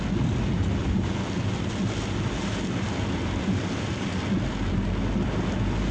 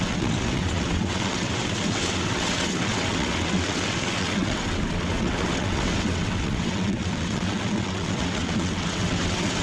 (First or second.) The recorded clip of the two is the first